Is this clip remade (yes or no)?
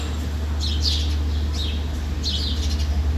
no